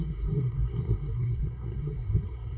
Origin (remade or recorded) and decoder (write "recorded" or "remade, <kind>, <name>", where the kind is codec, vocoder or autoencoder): remade, codec, SNAC